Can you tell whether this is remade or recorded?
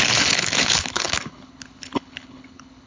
remade